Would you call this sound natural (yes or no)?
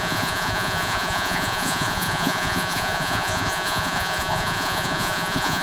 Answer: no